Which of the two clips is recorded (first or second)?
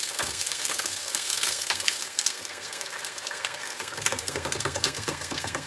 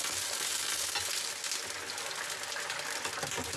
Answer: second